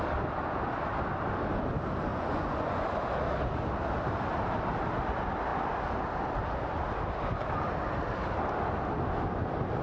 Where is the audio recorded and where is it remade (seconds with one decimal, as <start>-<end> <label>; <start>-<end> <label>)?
0.0-2.1 recorded; 2.1-2.9 remade; 2.9-9.8 recorded